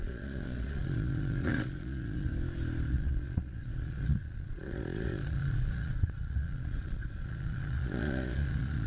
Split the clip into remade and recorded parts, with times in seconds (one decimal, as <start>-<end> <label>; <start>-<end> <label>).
0.0-2.3 remade; 2.3-2.9 recorded; 2.9-8.9 remade